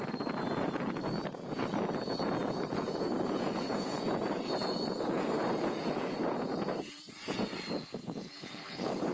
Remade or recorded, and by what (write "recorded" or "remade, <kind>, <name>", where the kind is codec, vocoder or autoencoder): remade, vocoder, Vocos